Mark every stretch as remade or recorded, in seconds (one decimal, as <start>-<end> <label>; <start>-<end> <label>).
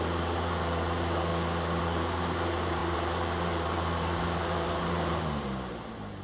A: 0.0-1.3 remade; 1.3-1.8 recorded; 1.8-6.2 remade